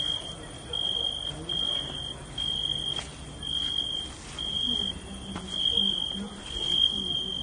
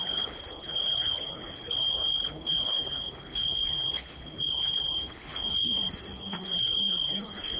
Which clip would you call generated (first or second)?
second